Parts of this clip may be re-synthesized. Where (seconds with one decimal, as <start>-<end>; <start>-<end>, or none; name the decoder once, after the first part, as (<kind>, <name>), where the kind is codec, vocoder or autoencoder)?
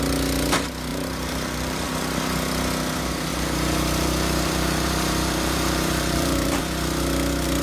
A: 0.9-1.9 (vocoder, BigVGAN v2); 3.3-6.6